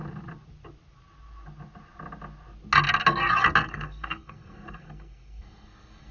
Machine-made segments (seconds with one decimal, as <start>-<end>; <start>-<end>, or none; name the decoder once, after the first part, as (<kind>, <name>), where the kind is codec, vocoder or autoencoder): 3.7-6.1 (codec, SNAC)